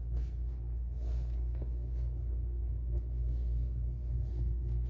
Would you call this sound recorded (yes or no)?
no